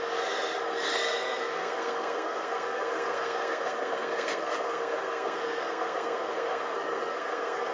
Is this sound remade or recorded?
remade